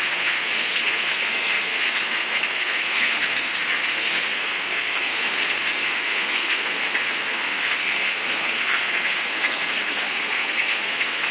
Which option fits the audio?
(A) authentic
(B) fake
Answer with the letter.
B